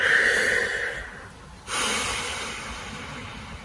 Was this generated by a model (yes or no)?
no